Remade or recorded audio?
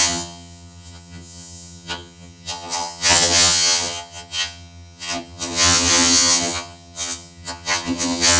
remade